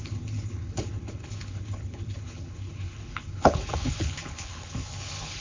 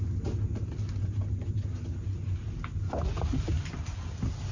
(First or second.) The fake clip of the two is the first